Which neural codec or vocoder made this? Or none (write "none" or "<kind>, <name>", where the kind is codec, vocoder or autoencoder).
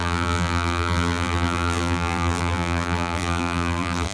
vocoder, BigVGAN v2